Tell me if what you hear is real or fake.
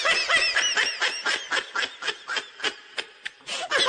real